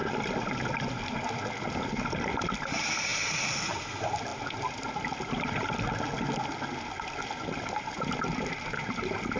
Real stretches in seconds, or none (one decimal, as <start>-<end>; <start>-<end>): 0.9-3.1; 3.8-4.3; 5.5-9.4